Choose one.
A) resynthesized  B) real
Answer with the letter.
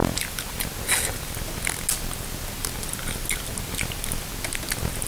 B